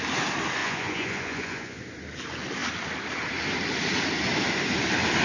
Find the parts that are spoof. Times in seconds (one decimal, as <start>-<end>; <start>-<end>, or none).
0.6-1.8

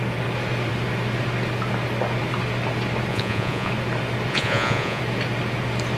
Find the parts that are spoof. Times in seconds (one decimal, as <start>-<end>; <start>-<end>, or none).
3.1-3.7; 4.3-5.0